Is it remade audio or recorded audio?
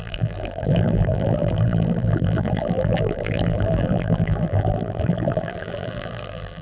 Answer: remade